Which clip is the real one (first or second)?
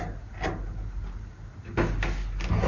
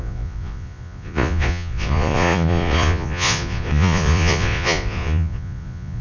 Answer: first